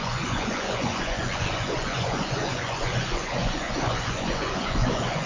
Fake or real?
fake